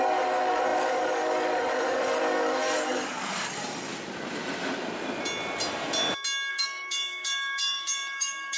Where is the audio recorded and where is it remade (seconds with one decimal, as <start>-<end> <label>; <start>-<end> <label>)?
0.0-3.9 remade; 3.9-6.5 recorded; 6.5-8.6 remade

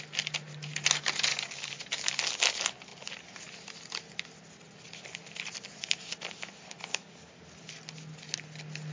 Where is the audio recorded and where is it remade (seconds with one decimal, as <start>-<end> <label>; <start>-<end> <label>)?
0.0-1.3 recorded; 1.3-1.8 remade; 1.8-6.9 recorded; 6.9-7.4 remade; 7.4-8.9 recorded

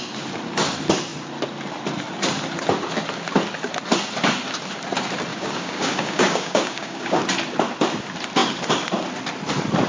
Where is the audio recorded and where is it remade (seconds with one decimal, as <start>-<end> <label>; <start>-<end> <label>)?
0.0-5.3 recorded; 5.3-7.2 remade; 7.2-9.9 recorded

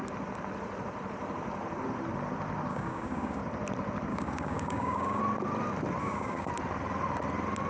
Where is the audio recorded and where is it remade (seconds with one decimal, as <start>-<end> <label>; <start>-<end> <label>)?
0.0-2.7 recorded; 2.7-3.4 remade; 3.4-4.1 recorded; 4.1-5.2 remade; 5.2-6.0 recorded; 6.0-6.5 remade; 6.5-7.7 recorded

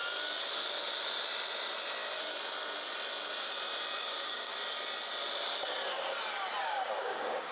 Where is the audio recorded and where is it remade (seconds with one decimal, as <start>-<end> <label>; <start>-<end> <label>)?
0.0-4.0 recorded; 4.0-4.5 remade; 4.5-6.6 recorded; 6.6-7.5 remade

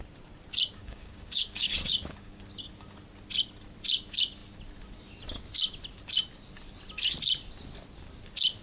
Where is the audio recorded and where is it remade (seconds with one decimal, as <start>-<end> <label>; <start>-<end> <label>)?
0.0-0.8 recorded; 0.8-2.4 remade; 2.4-8.6 recorded

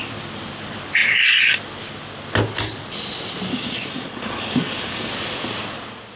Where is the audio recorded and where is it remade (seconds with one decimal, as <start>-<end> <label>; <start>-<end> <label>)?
0.0-3.5 recorded; 3.5-5.1 remade; 5.1-6.2 recorded